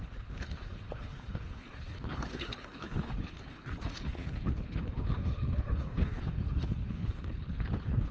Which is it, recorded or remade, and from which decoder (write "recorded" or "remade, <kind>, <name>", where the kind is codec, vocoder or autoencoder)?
remade, codec, HILCodec